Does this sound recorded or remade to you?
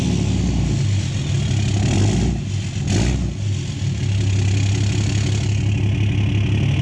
recorded